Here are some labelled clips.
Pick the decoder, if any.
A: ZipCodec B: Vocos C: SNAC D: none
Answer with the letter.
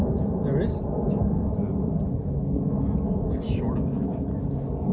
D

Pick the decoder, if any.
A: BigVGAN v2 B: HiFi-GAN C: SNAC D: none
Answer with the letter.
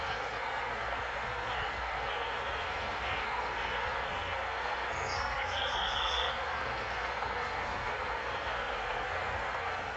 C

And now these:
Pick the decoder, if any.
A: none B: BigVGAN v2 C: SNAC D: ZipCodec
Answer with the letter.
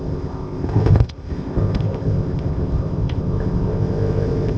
D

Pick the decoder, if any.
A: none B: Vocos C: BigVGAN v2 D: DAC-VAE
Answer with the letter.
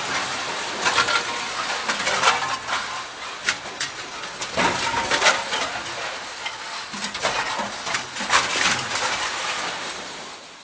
A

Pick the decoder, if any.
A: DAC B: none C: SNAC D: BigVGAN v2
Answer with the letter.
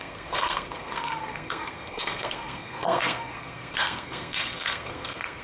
C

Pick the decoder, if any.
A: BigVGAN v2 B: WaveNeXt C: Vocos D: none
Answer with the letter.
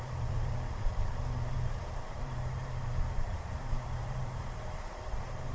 A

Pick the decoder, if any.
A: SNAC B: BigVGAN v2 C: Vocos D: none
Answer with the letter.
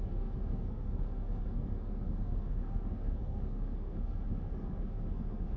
A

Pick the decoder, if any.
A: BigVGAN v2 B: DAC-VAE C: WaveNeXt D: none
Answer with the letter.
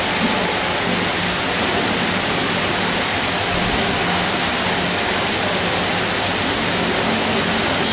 D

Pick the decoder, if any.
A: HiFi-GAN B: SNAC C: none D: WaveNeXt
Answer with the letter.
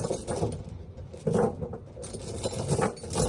C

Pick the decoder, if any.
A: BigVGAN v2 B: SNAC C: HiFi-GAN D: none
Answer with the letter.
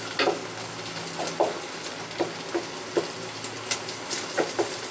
D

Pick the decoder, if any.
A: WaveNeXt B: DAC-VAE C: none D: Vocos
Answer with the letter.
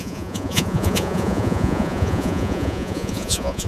D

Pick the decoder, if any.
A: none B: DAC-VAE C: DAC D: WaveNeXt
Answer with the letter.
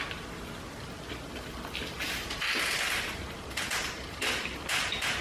A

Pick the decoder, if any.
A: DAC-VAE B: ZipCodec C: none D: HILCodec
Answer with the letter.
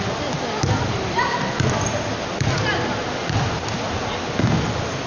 C